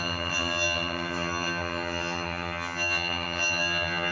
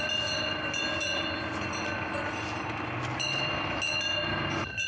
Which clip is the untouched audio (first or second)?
second